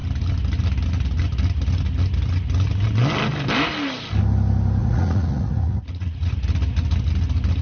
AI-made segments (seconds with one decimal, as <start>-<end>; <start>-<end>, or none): 4.8-6.3